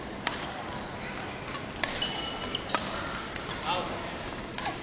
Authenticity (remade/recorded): recorded